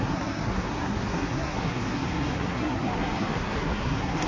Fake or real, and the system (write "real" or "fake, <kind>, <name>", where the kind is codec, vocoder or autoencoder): fake, codec, SNAC